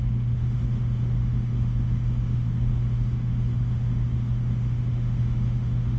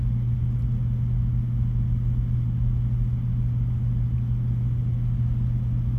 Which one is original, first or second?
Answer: second